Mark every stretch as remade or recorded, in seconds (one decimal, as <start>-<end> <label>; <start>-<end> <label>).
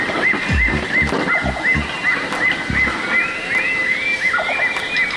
0.0-5.2 recorded